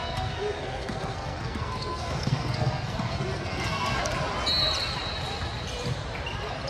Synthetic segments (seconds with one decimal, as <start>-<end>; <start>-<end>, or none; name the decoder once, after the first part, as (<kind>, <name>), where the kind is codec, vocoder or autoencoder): 0.0-4.0 (codec, SNAC)